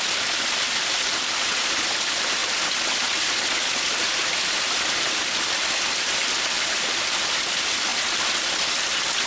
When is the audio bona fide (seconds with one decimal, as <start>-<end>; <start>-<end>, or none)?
0.0-9.3